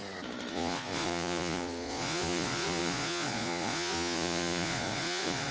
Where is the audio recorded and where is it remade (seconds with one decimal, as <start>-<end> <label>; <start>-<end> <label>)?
0.0-0.5 recorded; 0.5-5.5 remade